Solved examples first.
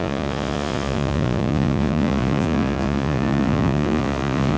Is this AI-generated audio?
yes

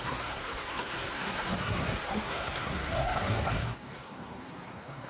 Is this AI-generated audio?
yes